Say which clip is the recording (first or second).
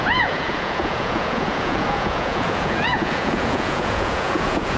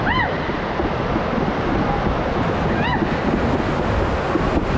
second